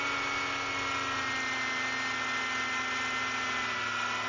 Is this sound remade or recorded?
recorded